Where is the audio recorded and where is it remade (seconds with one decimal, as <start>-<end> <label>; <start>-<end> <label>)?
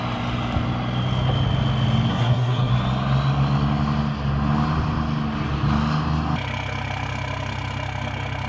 0.0-2.1 recorded; 2.1-2.7 remade; 2.7-8.5 recorded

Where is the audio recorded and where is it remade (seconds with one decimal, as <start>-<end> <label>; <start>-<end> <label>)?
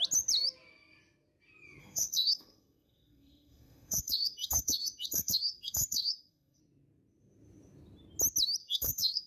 0.0-1.8 recorded; 1.8-6.6 remade; 6.6-8.6 recorded; 8.6-9.3 remade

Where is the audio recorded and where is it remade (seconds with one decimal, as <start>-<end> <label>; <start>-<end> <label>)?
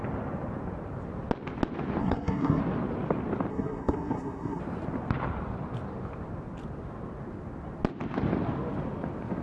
0.0-2.0 recorded; 2.0-2.6 remade; 2.6-3.5 recorded; 3.5-4.6 remade; 4.6-9.4 recorded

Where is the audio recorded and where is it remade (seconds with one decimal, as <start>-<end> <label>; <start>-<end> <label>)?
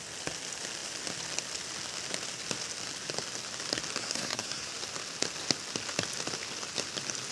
0.0-4.0 recorded; 4.0-4.7 remade; 4.7-7.3 recorded